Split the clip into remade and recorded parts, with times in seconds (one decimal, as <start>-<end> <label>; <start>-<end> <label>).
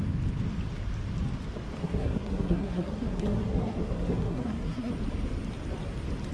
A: 0.0-1.8 recorded; 1.8-4.9 remade; 4.9-6.3 recorded